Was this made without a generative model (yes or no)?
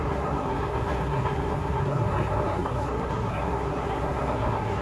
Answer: no